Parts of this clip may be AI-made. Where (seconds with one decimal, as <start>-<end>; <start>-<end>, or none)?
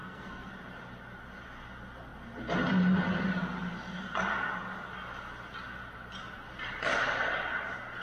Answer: 0.0-0.5